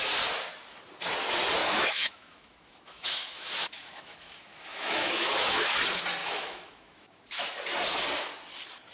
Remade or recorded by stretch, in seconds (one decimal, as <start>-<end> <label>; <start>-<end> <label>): 0.0-1.6 recorded; 1.6-5.8 remade; 5.8-6.2 recorded; 6.2-7.5 remade; 7.5-8.9 recorded